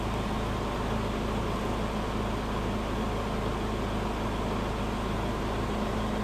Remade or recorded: recorded